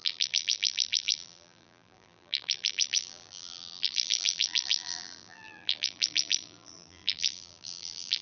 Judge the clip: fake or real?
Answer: fake